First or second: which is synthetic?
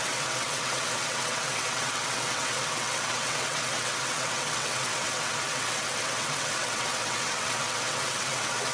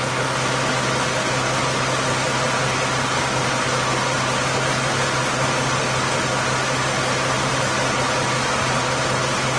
first